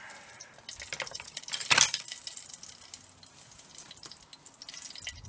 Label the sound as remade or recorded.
recorded